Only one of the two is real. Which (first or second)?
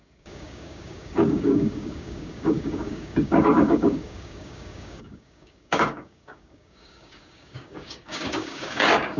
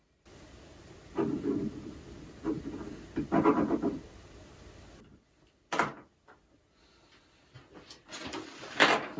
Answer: second